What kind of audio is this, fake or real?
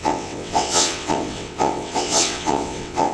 fake